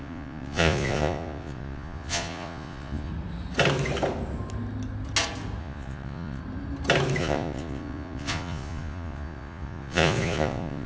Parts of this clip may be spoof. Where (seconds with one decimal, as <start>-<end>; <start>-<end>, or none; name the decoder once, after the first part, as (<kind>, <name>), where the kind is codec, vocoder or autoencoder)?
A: 0.0-3.1 (vocoder, Vocos); 5.6-6.4; 7.2-10.9